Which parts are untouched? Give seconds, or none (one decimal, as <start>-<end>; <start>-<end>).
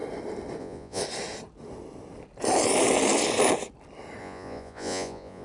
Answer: 0.0-0.6; 1.0-4.2